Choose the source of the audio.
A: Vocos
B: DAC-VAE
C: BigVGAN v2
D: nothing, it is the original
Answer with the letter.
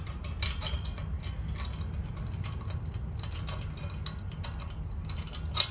D